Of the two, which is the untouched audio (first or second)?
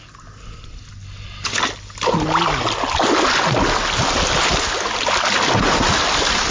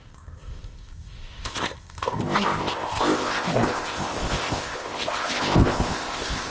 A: first